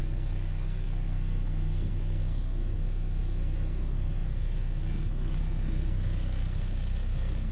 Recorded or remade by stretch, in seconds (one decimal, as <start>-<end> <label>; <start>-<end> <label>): 0.0-7.5 remade